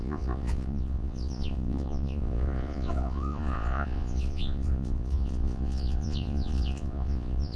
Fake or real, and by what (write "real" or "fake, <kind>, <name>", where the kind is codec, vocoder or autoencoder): fake, vocoder, Vocos